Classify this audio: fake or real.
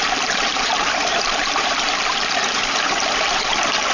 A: fake